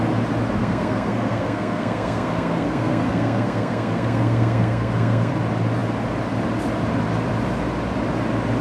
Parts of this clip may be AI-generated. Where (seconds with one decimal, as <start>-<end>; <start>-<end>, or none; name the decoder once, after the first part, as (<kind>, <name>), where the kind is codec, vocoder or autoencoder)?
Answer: 0.6-5.3 (codec, SNAC)